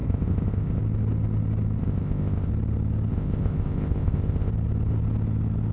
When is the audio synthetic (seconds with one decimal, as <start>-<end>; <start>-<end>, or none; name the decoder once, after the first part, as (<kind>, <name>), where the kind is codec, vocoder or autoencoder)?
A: 0.0-0.8 (codec, ZipCodec); 1.8-2.5; 3.1-4.5